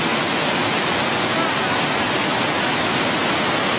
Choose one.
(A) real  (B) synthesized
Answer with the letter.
A